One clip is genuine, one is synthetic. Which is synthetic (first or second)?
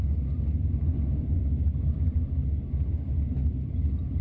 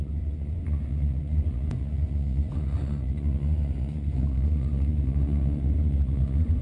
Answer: second